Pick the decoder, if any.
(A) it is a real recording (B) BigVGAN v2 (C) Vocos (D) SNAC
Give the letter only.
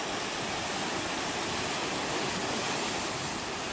A